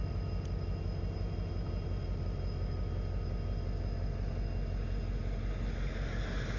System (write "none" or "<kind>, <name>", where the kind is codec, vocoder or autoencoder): none